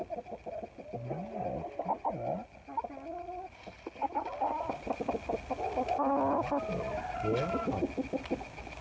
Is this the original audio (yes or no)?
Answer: yes